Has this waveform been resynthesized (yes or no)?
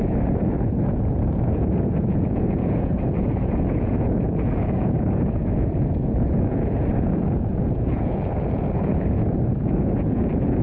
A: yes